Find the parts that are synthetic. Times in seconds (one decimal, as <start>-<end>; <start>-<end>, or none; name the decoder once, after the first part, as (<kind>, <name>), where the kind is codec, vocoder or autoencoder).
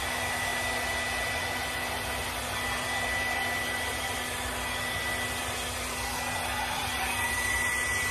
none